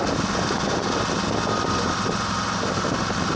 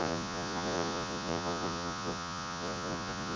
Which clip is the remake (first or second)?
second